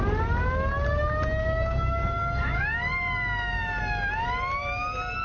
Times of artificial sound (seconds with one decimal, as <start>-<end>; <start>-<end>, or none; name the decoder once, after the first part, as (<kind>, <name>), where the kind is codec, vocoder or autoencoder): 1.4-3.8 (codec, DAC)